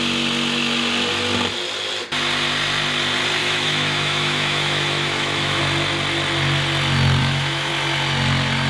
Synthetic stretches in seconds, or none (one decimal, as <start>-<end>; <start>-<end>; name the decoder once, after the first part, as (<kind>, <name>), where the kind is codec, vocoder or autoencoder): 3.4-5.6 (autoencoder, DAC-VAE); 7.2-7.7